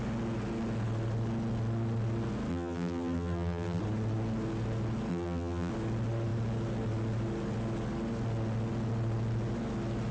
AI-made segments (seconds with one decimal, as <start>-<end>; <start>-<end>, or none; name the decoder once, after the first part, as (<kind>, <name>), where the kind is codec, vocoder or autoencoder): 2.5-3.8 (vocoder, BigVGAN v2); 5.1-5.7